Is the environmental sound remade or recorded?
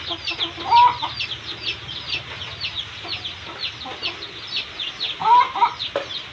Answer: recorded